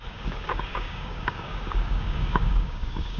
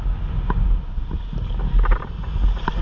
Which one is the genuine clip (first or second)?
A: second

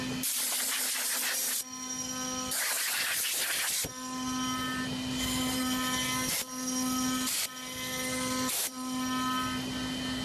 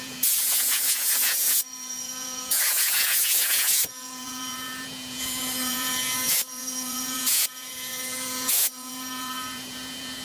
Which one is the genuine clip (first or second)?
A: first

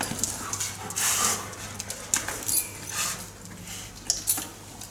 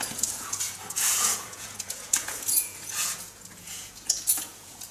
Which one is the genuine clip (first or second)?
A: first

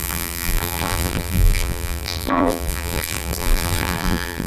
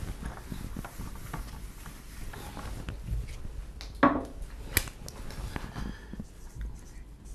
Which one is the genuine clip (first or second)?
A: second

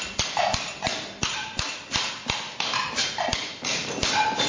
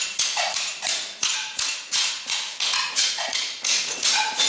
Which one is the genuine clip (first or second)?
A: first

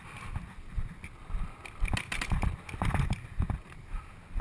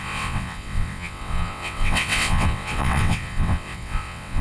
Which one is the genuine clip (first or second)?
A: first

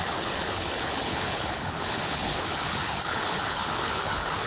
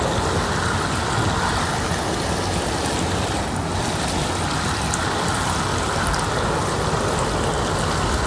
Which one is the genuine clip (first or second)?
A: second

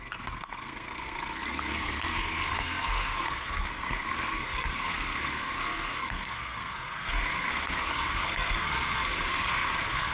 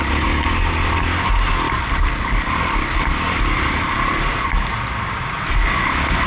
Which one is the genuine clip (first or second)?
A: second